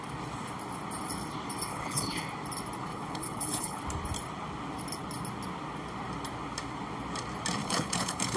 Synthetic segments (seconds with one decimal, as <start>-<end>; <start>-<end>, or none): 1.7-2.2; 2.9-3.8; 7.6-8.4